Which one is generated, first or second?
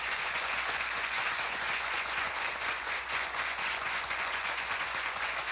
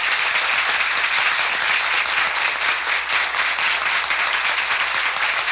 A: first